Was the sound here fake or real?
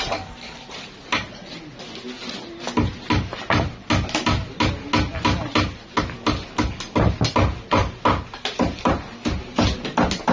real